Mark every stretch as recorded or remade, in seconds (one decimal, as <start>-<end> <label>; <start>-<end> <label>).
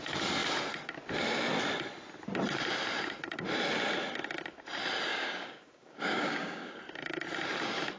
0.0-5.1 recorded; 5.1-6.8 remade; 6.8-8.0 recorded